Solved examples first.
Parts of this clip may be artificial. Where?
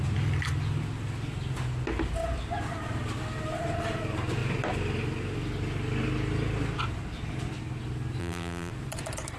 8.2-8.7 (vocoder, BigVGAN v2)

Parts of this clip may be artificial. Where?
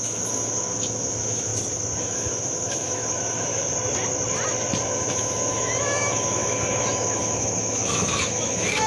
0.0-1.5 (autoencoder, DAC-VAE); 2.0-3.7; 4.8-8.9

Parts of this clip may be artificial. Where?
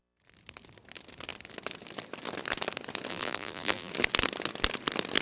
3.1-3.9 (vocoder, BigVGAN v2)